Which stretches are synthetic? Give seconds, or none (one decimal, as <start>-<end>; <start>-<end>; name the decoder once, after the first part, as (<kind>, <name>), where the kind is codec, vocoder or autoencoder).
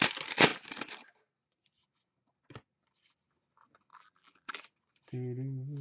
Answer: 3.9-4.6 (vocoder, BigVGAN v2)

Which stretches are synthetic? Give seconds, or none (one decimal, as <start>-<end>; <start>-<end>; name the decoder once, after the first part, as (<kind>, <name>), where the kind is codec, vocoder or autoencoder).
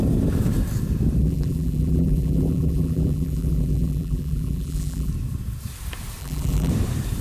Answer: 1.2-5.1 (vocoder, BigVGAN v2); 6.2-6.7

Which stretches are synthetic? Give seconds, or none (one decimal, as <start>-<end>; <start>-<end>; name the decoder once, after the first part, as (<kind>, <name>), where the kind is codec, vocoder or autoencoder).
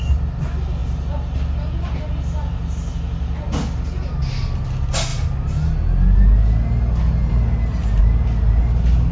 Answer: none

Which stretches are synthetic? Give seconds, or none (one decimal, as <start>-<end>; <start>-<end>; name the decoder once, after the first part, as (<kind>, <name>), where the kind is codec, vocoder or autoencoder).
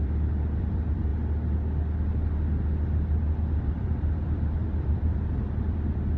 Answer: 0.0-1.1 (vocoder, BigVGAN v2); 3.7-6.2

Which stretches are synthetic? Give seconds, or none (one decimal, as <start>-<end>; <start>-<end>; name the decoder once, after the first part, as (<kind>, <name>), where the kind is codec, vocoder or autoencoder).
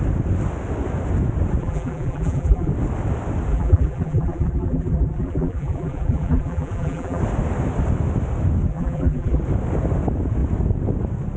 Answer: 1.6-2.7 (vocoder, BigVGAN v2); 3.5-7.2; 8.7-9.4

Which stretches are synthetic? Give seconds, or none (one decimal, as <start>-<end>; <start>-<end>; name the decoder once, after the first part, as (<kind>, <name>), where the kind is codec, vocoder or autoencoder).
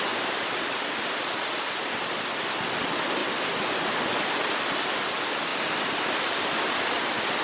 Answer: 3.2-3.9 (vocoder, BigVGAN v2)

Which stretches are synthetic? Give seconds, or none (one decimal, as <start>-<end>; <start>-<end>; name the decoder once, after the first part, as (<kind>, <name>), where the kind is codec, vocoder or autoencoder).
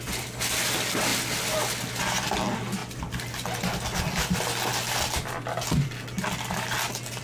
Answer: none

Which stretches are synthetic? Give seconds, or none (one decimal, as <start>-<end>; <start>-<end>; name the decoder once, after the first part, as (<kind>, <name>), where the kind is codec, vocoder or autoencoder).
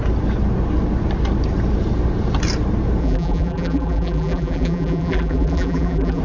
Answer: 3.0-6.2 (vocoder, BigVGAN v2)